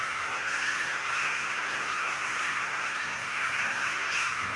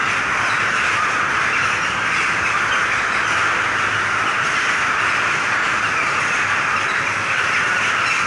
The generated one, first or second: first